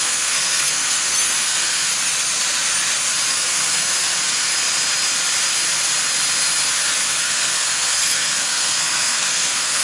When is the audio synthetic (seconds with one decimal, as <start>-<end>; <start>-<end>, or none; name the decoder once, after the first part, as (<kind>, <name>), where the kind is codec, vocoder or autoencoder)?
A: 0.0-1.9 (codec, SNAC); 3.3-4.5; 7.2-9.8